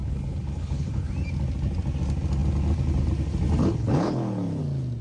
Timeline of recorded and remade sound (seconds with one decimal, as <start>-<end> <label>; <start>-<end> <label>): 0.0-1.1 remade; 1.1-3.6 recorded; 3.6-4.6 remade; 4.6-5.0 recorded